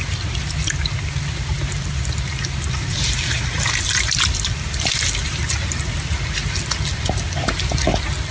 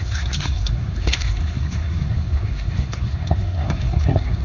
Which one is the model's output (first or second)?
second